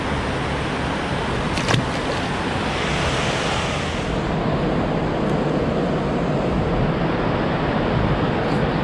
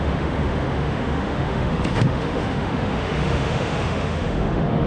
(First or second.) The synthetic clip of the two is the second